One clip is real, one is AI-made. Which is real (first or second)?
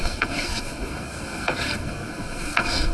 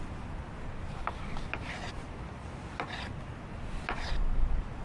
second